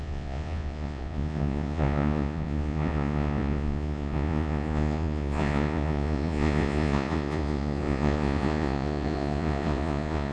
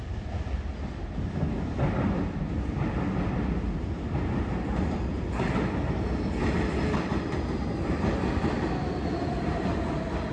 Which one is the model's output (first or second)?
first